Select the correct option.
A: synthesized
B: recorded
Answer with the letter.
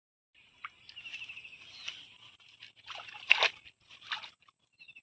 B